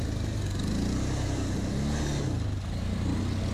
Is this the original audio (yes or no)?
yes